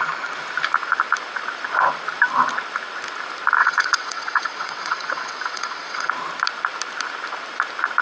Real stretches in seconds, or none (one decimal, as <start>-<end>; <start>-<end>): 0.0-3.6; 6.1-8.0